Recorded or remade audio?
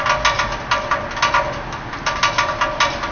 recorded